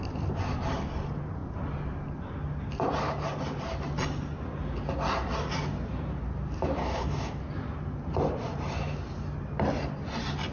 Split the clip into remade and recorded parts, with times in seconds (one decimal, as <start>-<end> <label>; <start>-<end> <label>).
0.0-6.8 recorded; 6.8-7.4 remade; 7.4-10.5 recorded

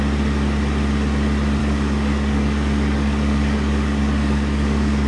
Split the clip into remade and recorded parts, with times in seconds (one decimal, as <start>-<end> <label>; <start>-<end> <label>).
0.0-1.6 recorded; 1.6-5.1 remade

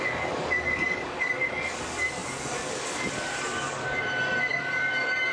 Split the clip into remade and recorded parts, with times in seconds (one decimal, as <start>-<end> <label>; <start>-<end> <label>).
0.0-3.8 remade; 3.8-4.5 recorded; 4.5-5.3 remade

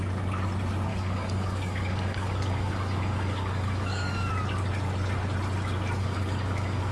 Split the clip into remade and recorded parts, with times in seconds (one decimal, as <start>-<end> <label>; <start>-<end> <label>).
0.0-0.9 recorded; 0.9-4.3 remade; 4.3-6.0 recorded; 6.0-6.9 remade